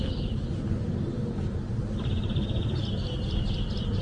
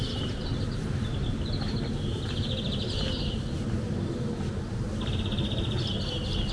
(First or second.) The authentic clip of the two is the second